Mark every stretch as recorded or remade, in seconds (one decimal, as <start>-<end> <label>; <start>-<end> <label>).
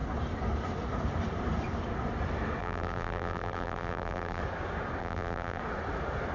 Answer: 0.0-2.6 recorded; 2.6-4.4 remade; 4.4-5.0 recorded; 5.0-5.6 remade; 5.6-6.3 recorded